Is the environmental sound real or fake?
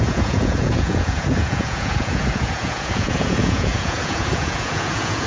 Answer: fake